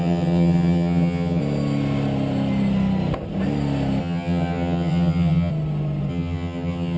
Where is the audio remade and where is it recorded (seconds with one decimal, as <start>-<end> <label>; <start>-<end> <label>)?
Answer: 0.0-1.4 remade; 1.4-4.0 recorded; 4.0-5.5 remade; 5.5-6.1 recorded; 6.1-7.0 remade